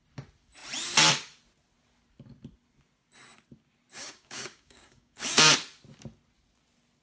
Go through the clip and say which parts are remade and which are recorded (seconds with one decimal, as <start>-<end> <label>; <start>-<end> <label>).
0.0-3.9 recorded; 3.9-5.5 remade; 5.5-7.0 recorded